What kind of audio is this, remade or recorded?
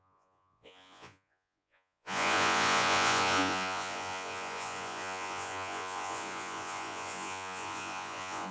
remade